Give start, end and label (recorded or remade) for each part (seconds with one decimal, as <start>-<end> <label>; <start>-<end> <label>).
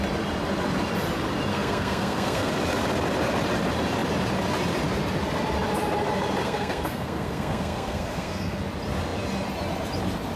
0.0-1.5 recorded; 1.5-2.5 remade; 2.5-6.4 recorded; 6.4-8.6 remade; 8.6-10.4 recorded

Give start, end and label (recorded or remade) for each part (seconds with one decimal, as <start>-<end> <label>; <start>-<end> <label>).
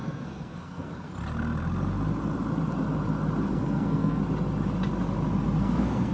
0.0-1.1 remade; 1.1-3.5 recorded; 3.5-4.2 remade; 4.2-5.6 recorded; 5.6-6.1 remade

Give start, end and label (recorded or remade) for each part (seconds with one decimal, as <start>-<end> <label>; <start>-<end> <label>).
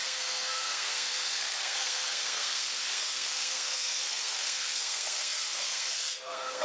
0.0-6.6 remade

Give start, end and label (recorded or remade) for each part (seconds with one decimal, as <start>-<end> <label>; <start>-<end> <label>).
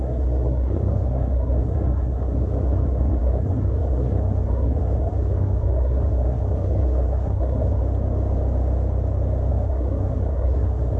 0.0-7.8 remade; 7.8-9.5 recorded; 9.5-11.0 remade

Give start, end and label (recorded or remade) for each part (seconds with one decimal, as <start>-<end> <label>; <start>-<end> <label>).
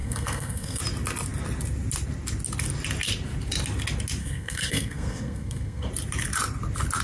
0.0-0.8 remade; 0.8-4.2 recorded; 4.2-5.9 remade; 5.9-7.0 recorded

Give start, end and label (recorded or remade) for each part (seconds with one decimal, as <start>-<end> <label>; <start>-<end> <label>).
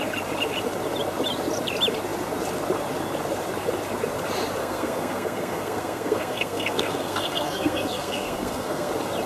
0.0-4.6 recorded; 4.6-8.9 remade; 8.9-9.3 recorded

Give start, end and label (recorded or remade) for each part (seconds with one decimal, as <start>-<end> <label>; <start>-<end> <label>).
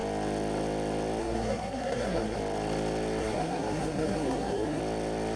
0.0-1.2 recorded; 1.2-2.4 remade; 2.4-3.2 recorded; 3.2-4.8 remade; 4.8-5.4 recorded